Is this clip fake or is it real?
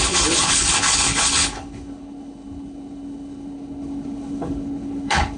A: fake